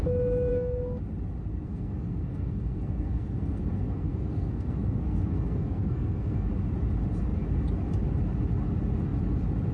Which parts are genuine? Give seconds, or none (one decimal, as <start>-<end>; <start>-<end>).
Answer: 0.0-0.5; 1.0-1.5; 6.5-9.7

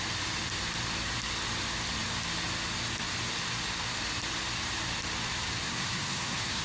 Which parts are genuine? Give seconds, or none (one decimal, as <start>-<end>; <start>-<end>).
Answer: 0.0-5.6

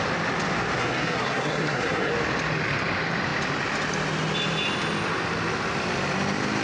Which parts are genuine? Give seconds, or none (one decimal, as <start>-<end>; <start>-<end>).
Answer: 0.0-0.8; 2.1-6.6

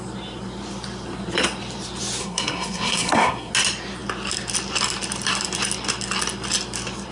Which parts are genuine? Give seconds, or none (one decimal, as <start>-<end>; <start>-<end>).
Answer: 0.0-2.2; 3.5-7.1